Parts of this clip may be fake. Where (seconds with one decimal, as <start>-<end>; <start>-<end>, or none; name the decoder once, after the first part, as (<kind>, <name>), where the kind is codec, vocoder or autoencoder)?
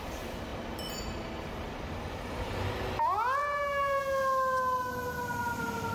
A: 3.4-4.0 (vocoder, BigVGAN v2)